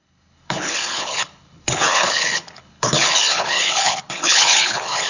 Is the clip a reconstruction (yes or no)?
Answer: yes